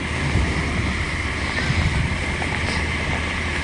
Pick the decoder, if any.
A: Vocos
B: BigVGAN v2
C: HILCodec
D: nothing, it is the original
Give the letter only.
D